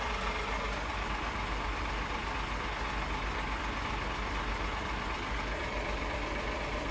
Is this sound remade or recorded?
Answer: recorded